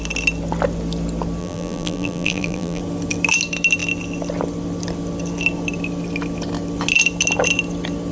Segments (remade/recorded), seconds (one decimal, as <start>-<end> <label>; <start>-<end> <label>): 0.0-1.4 recorded; 1.4-2.8 remade; 2.8-8.1 recorded